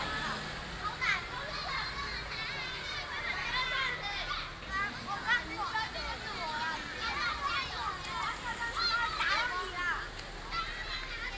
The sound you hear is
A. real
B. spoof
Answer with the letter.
A